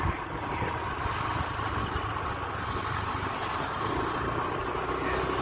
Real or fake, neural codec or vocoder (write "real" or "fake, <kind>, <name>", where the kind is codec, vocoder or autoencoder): real